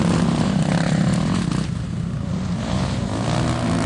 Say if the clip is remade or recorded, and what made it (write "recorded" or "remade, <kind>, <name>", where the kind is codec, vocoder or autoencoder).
recorded